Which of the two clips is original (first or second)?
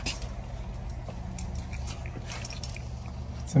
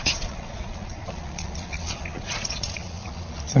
first